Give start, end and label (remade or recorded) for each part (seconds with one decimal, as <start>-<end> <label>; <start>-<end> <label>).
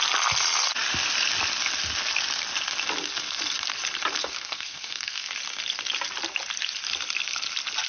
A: 0.0-4.2 recorded; 4.2-5.3 remade; 5.3-7.9 recorded